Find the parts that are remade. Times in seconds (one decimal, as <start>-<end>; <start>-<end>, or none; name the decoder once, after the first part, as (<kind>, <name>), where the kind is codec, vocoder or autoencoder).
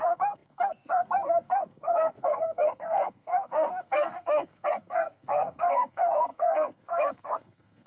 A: 0.0-7.9 (codec, SNAC)